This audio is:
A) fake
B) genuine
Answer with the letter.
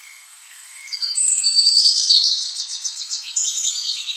A